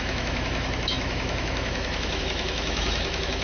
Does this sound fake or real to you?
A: fake